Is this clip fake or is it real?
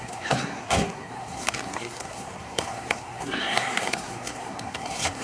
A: fake